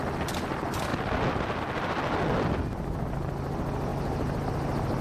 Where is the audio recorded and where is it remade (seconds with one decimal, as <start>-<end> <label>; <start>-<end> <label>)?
0.0-3.9 recorded; 3.9-4.5 remade; 4.5-5.0 recorded